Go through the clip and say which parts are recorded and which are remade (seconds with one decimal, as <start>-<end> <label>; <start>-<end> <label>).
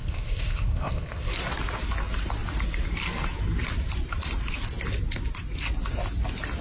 0.0-1.3 remade; 1.3-6.6 recorded